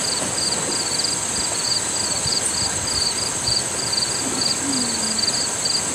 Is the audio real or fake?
real